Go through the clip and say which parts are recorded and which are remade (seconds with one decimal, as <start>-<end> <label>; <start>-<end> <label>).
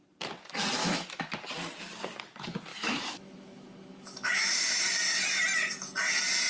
0.0-0.8 recorded; 0.8-1.3 remade; 1.3-2.7 recorded; 2.7-4.8 remade; 4.8-6.5 recorded